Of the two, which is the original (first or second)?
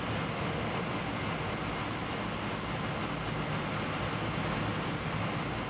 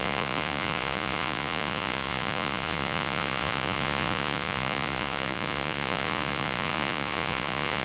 first